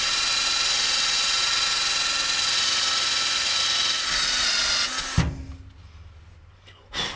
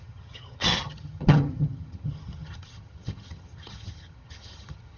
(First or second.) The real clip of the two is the first